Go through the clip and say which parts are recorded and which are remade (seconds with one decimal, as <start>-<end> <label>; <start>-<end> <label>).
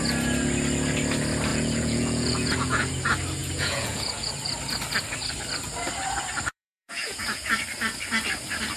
0.0-1.5 recorded; 1.5-2.9 remade; 2.9-3.4 recorded; 3.4-4.3 remade; 4.3-6.5 recorded; 6.5-7.6 remade; 7.6-8.8 recorded